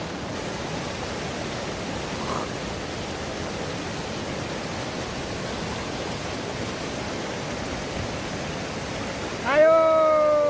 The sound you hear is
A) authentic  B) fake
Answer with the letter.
A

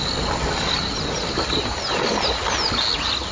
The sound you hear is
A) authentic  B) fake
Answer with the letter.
A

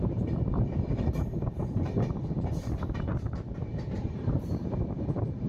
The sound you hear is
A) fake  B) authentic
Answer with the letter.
A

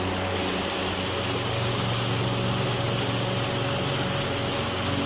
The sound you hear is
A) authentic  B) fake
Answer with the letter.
A